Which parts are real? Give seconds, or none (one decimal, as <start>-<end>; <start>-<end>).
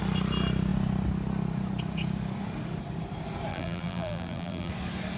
0.0-3.5; 4.7-5.2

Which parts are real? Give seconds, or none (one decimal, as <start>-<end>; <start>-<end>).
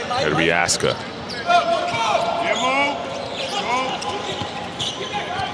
0.6-3.9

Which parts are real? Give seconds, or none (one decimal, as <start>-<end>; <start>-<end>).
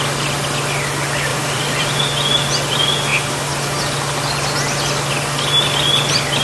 0.0-1.3; 2.0-6.4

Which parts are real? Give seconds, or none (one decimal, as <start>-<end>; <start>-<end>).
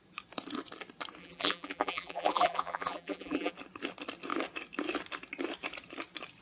0.0-1.2; 3.5-6.4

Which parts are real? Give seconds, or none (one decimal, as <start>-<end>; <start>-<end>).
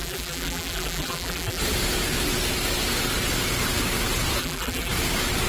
1.6-4.4; 4.9-5.5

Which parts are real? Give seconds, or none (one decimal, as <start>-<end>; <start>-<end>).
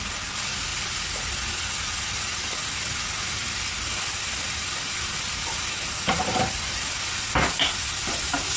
0.0-8.6